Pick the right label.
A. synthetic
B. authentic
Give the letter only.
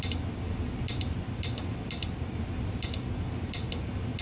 B